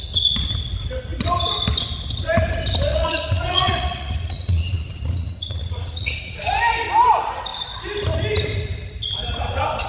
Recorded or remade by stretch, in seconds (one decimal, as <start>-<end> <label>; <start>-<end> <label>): 0.0-2.9 recorded; 2.9-6.5 remade; 6.5-9.9 recorded